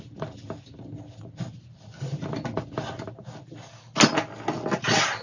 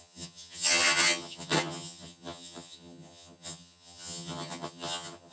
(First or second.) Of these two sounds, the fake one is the second